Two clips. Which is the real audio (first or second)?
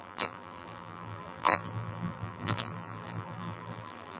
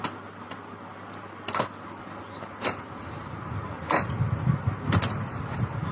second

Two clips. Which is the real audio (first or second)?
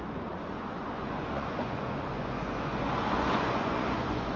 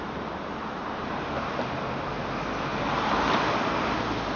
second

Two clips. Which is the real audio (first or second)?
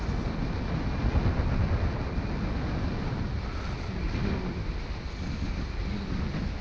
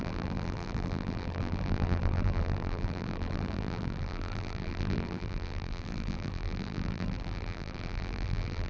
first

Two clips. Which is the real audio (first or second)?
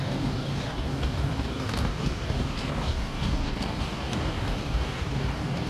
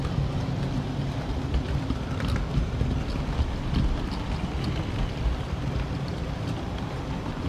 second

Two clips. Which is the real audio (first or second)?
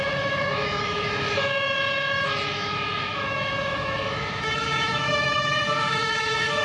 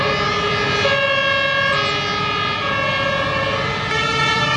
second